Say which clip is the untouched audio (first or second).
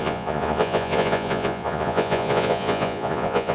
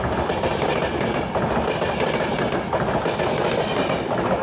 second